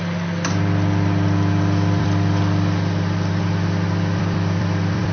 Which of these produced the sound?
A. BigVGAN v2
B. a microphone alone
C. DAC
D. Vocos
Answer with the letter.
A